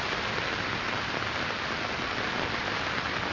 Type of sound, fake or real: real